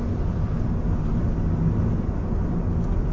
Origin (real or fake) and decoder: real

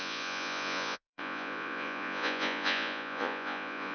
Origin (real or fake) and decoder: fake, vocoder, Vocos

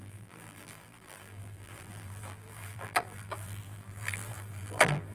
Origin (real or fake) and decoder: fake, vocoder, BigVGAN v2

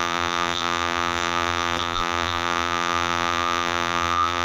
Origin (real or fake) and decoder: fake, vocoder, BigVGAN v2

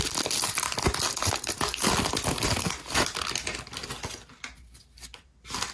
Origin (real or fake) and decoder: real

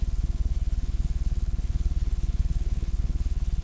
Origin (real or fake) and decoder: fake, codec, HILCodec